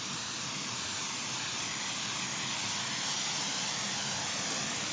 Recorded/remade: recorded